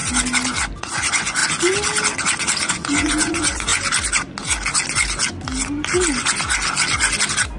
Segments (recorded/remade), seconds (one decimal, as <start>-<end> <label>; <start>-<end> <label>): 0.0-0.8 recorded; 0.8-1.4 remade; 1.4-2.7 recorded; 2.7-3.7 remade; 3.7-7.6 recorded